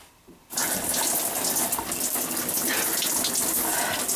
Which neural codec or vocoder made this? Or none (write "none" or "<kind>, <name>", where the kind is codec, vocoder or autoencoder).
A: none